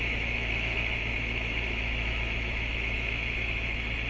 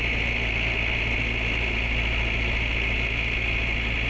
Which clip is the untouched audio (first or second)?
second